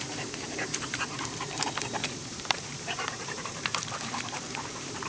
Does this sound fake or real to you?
fake